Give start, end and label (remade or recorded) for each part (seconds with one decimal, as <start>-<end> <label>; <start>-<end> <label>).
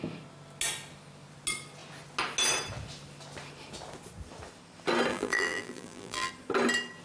0.0-5.1 recorded; 5.1-6.3 remade; 6.3-7.0 recorded